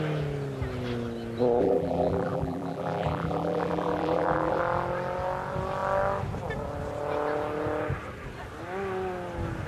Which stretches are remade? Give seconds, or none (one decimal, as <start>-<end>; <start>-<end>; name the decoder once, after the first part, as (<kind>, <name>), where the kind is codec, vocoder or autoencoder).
1.6-4.6 (vocoder, BigVGAN v2)

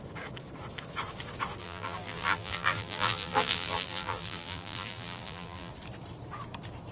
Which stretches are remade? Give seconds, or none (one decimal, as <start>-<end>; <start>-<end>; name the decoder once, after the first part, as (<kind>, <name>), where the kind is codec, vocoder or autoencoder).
1.6-5.7 (vocoder, BigVGAN v2)

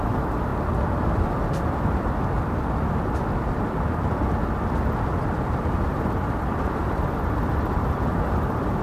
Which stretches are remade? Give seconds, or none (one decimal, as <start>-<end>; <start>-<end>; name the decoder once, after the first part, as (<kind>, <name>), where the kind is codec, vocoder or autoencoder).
0.0-0.5 (vocoder, BigVGAN v2); 5.4-8.8